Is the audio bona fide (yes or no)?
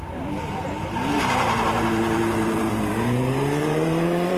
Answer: no